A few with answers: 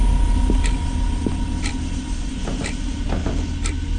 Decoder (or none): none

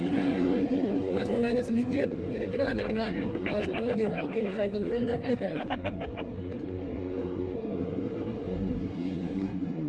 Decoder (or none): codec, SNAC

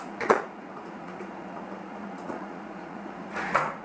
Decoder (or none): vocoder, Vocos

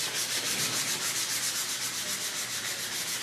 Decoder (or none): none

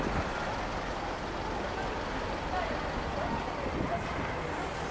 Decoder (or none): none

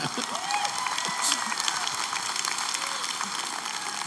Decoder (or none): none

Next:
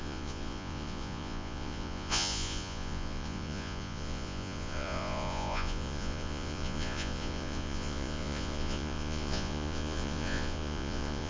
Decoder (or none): vocoder, Vocos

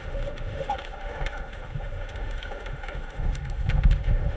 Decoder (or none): autoencoder, DAC-VAE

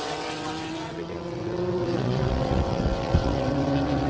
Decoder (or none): vocoder, WaveNeXt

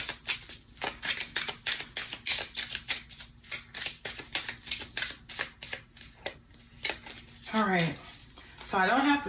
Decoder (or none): none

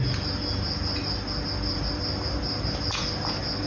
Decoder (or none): none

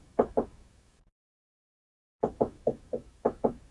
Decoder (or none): autoencoder, DAC-VAE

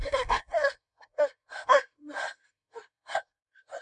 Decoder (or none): codec, SNAC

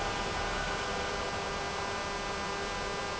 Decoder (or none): none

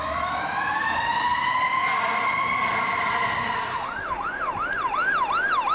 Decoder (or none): vocoder, BigVGAN v2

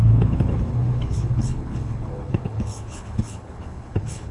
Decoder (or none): codec, HILCodec